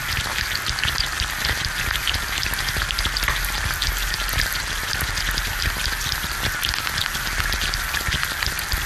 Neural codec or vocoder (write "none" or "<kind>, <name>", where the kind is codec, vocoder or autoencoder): none